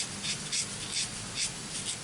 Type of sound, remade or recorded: recorded